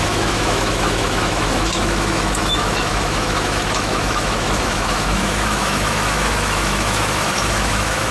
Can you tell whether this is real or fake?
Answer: fake